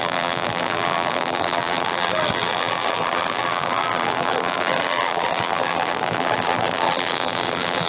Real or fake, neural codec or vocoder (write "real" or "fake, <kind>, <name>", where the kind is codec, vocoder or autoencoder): fake, vocoder, BigVGAN v2